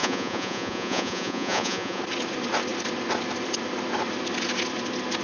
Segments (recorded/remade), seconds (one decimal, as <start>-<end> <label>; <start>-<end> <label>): 0.0-2.0 remade; 2.0-5.2 recorded